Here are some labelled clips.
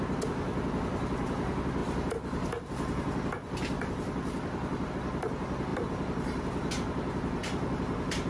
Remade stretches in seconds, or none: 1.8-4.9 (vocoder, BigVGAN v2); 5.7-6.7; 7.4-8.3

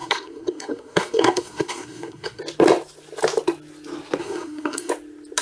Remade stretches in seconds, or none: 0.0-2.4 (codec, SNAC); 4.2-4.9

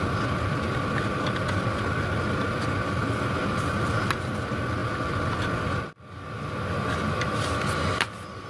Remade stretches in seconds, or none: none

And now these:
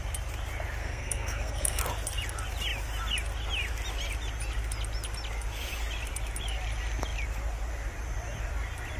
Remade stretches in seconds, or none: 0.8-1.8 (codec, SNAC)

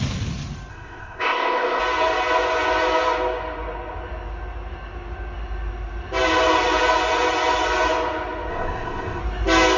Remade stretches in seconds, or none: 0.7-1.8 (codec, ZipCodec); 8.5-9.2

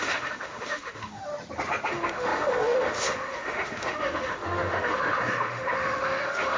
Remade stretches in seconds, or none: 0.0-1.3 (autoencoder, DAC-VAE); 1.9-6.6